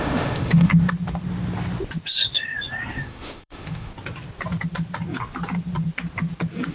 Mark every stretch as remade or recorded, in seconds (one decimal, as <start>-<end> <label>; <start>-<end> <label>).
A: 0.0-0.7 remade; 0.7-2.9 recorded; 2.9-3.9 remade; 3.9-6.7 recorded